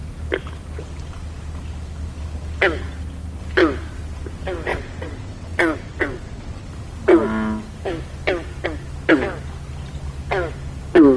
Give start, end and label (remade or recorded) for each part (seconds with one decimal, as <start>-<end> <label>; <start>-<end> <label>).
0.0-4.7 recorded; 4.7-6.7 remade; 6.7-11.2 recorded